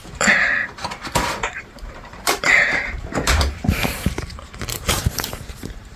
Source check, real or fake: fake